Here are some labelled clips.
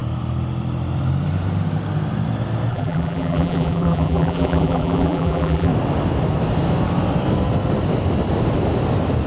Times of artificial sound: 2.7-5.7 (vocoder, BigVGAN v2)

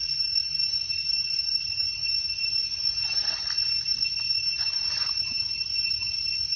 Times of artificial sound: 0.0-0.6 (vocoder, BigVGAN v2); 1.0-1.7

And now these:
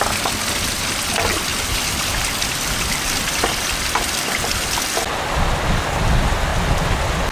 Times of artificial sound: 1.5-3.7 (vocoder, BigVGAN v2)

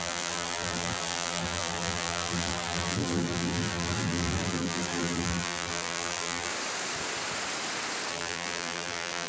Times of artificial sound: 0.0-6.5 (vocoder, BigVGAN v2); 8.1-9.3

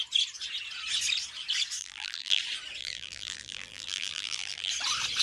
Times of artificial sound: 1.8-2.4 (vocoder, BigVGAN v2); 2.8-4.7

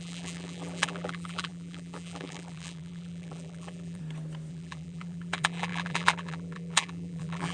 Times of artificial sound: 0.0-4.0 (vocoder, BigVGAN v2); 4.5-7.5

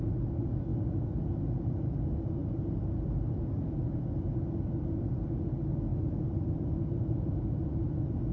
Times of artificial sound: 5.9-7.1 (vocoder, BigVGAN v2)

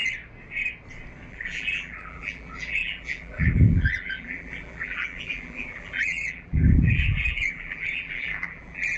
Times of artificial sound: 1.3-9.0 (vocoder, BigVGAN v2)